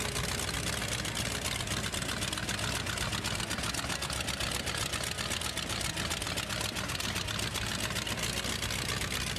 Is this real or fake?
real